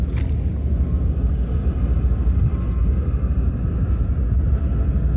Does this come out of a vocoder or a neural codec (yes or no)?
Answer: no